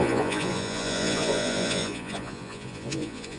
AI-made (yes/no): yes